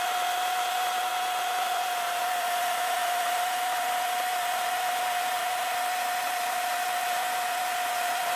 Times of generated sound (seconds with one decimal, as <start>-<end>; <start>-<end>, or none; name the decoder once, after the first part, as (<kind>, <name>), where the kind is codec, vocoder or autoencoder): 0.0-1.1 (vocoder, BigVGAN v2); 1.7-5.4; 6.2-8.4